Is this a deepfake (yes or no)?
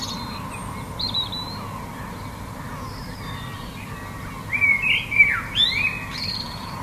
no